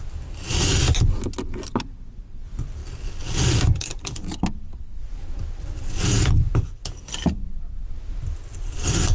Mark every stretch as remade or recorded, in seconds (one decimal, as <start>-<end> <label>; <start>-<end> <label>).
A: 0.0-9.1 recorded